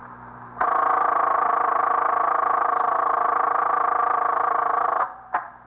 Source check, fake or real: real